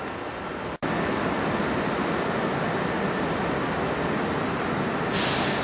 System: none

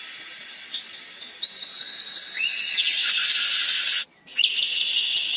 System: none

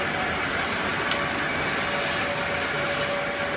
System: none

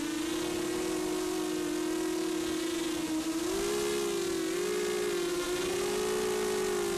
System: none